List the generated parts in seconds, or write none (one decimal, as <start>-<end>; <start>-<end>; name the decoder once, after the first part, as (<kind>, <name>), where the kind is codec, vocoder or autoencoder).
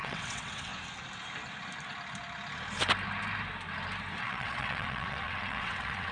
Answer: 0.0-0.7 (vocoder, WaveNeXt); 4.2-6.1